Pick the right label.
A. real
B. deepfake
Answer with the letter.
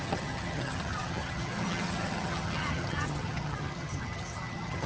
B